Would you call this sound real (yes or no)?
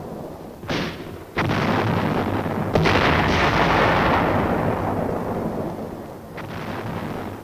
yes